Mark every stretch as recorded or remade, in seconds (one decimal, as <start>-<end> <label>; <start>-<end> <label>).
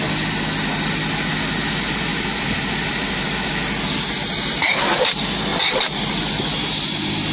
0.0-2.1 recorded; 2.1-3.3 remade; 3.3-5.5 recorded; 5.5-6.2 remade; 6.2-7.3 recorded